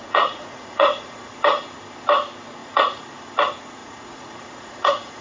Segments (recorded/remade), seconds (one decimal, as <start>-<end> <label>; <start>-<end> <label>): 0.0-1.3 remade; 1.3-2.6 recorded; 2.6-3.2 remade; 3.2-3.8 recorded; 3.8-5.2 remade